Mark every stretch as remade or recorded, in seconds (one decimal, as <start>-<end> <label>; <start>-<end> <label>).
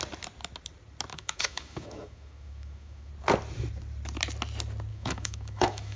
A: 0.0-1.1 recorded; 1.1-3.1 remade; 3.1-4.9 recorded; 4.9-6.0 remade